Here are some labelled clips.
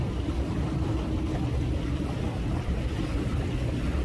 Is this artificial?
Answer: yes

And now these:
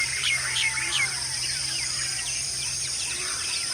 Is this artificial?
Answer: yes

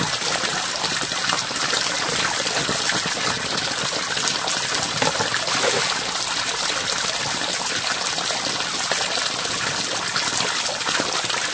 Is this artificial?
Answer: no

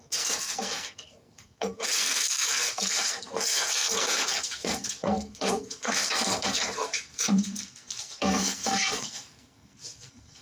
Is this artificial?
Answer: yes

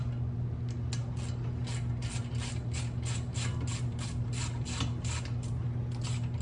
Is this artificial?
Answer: no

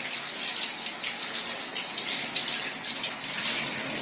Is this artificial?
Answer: no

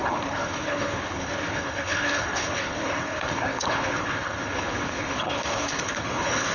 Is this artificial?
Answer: yes